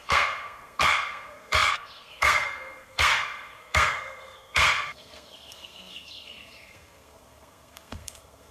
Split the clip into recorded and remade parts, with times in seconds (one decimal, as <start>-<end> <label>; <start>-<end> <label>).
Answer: 0.0-8.5 remade